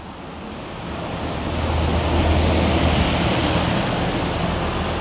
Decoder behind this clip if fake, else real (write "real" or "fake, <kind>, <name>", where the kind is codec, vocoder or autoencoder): real